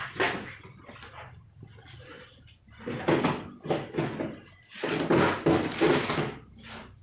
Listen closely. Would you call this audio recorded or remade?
recorded